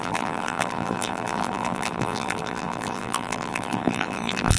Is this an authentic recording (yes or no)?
no